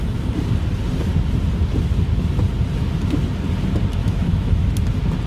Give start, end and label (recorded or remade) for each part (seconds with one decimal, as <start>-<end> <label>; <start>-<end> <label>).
0.0-4.0 recorded; 4.0-4.7 remade; 4.7-5.3 recorded